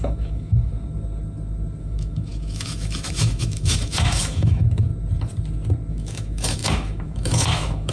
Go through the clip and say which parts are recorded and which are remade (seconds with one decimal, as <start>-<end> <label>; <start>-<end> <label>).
0.0-0.7 remade; 0.7-1.8 recorded; 1.8-4.9 remade; 4.9-5.9 recorded; 5.9-7.9 remade